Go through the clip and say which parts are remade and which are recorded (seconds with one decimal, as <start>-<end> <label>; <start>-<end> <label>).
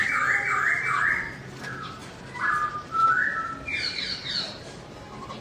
0.0-3.7 recorded; 3.7-4.3 remade; 4.3-5.4 recorded